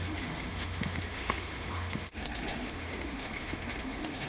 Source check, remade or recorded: remade